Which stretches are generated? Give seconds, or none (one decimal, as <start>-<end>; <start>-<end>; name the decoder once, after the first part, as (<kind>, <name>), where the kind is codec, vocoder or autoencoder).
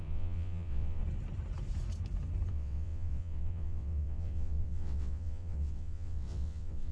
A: 0.0-1.0 (vocoder, WaveNeXt); 2.5-6.9